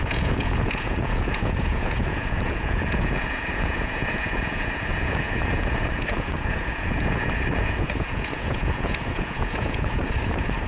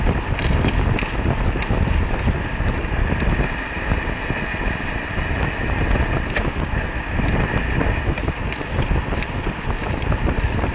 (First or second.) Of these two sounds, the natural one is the second